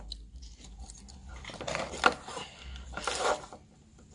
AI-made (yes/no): no